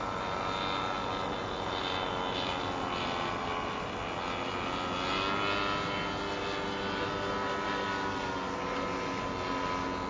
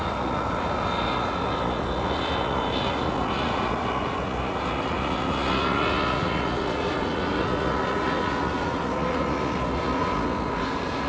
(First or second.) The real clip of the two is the first